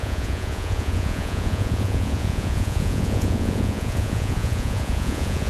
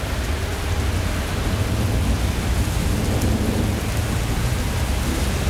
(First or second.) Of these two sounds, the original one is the second